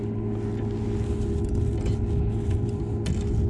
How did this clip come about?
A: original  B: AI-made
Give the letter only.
A